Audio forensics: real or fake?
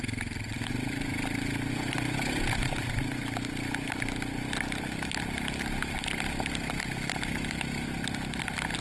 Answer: real